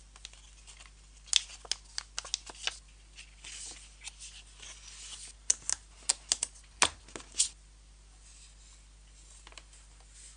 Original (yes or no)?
yes